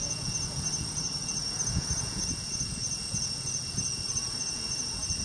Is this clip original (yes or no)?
no